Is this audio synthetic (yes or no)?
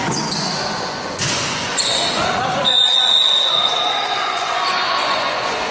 yes